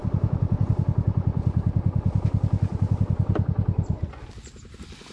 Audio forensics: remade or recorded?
recorded